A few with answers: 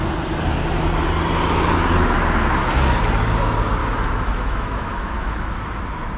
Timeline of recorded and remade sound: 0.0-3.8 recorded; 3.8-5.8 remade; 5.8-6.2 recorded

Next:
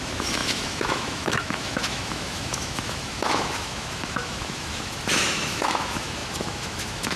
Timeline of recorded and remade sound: 0.0-7.2 remade

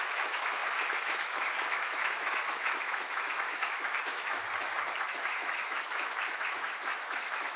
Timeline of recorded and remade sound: 0.0-4.4 remade; 4.4-5.0 recorded; 5.0-7.6 remade

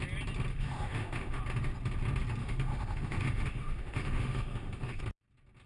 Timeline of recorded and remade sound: 0.0-0.5 recorded; 0.5-1.4 remade; 1.4-2.4 recorded; 2.4-5.0 remade; 5.0-5.7 recorded

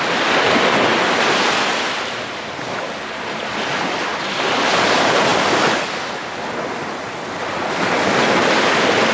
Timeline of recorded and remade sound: 0.0-9.1 recorded

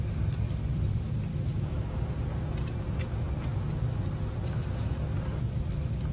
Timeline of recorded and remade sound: 0.0-1.3 recorded; 1.3-2.0 remade; 2.0-6.1 recorded

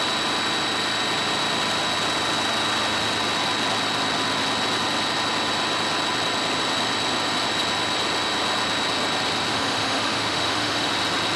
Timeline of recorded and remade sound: 0.0-9.5 recorded; 9.5-10.9 remade; 10.9-11.4 recorded